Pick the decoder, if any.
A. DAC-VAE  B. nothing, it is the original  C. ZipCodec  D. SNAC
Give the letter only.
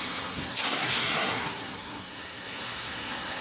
D